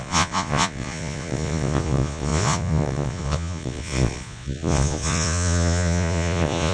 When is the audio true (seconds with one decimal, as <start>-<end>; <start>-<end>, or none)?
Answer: none